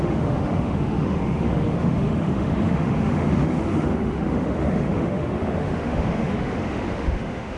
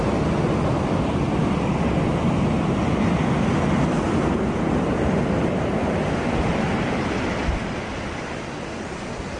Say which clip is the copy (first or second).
first